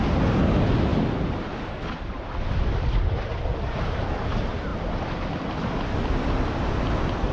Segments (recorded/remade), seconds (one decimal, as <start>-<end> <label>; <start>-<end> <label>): 0.0-7.3 recorded